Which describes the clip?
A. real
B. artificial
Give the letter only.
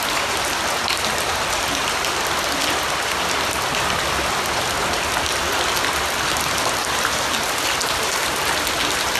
A